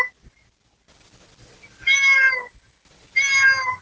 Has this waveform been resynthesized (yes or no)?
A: no